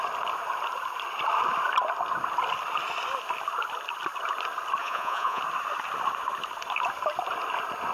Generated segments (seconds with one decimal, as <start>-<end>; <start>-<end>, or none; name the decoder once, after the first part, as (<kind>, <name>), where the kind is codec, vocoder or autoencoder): 4.8-5.4 (vocoder, Vocos)